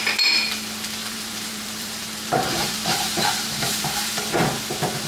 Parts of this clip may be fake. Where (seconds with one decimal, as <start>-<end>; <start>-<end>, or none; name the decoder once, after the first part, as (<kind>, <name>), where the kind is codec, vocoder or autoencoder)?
1.0-4.1 (vocoder, BigVGAN v2)